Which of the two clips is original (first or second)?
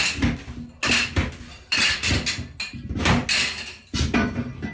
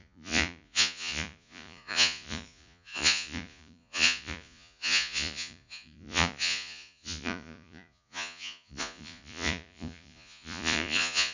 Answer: first